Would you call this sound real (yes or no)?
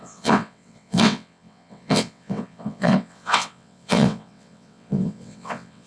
no